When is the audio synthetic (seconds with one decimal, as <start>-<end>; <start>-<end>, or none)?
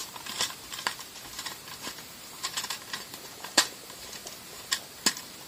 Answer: 0.0-4.2; 5.1-5.5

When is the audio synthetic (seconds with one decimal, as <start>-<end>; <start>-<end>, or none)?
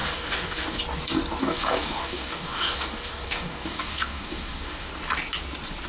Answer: 0.0-0.8; 1.4-4.9